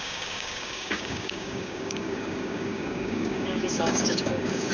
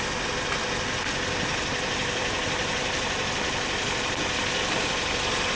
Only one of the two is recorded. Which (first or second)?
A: second